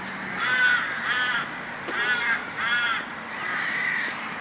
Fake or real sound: fake